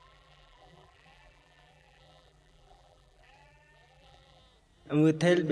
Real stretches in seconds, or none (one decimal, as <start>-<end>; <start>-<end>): 4.4-5.5